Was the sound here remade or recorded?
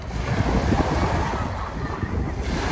recorded